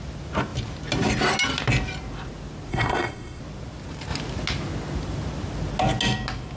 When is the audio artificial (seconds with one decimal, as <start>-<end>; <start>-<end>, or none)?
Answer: 2.7-3.4